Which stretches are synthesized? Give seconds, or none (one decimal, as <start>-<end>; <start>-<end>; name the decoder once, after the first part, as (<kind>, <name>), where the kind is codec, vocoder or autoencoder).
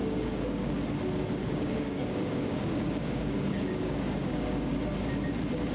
0.0-0.7 (codec, DAC); 1.4-4.8